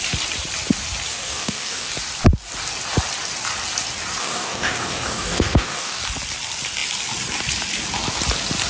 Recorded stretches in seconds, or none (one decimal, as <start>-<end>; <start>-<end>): 0.0-1.1; 1.9-4.2; 6.0-8.7